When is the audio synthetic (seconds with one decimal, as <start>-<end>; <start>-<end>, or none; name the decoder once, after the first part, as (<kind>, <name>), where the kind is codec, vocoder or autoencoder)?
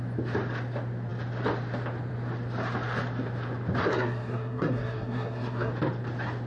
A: 3.8-5.7 (codec, SNAC)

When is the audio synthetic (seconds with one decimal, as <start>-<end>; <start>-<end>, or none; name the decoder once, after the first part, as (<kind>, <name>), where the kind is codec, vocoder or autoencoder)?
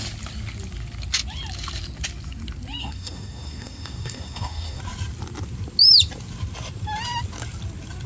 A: 2.8-4.8 (codec, SNAC)